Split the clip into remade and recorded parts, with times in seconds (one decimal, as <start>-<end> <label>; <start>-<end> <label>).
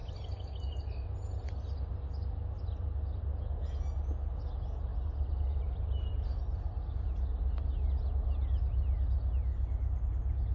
0.0-10.5 recorded